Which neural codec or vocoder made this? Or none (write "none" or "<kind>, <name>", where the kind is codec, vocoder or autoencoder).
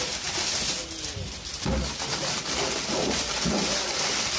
none